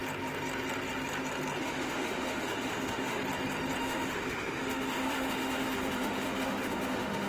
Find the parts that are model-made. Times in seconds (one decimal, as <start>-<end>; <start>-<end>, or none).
1.6-3.2; 3.8-7.3